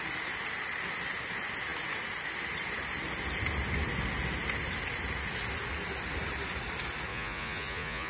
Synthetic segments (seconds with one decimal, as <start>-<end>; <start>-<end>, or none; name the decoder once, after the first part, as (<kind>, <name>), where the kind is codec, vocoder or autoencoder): 7.1-8.1 (vocoder, Vocos)